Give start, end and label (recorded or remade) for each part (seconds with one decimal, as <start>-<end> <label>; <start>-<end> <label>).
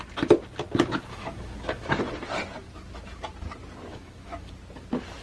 0.0-1.1 recorded; 1.1-2.0 remade; 2.0-3.9 recorded; 3.9-4.5 remade; 4.5-5.2 recorded